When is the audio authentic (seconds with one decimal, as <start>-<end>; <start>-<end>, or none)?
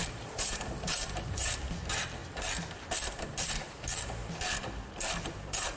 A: 2.2-3.2; 4.2-5.1